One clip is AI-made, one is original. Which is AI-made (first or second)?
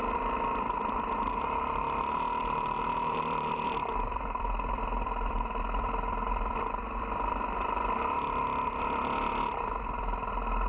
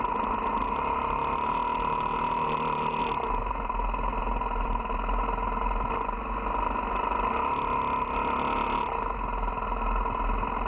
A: first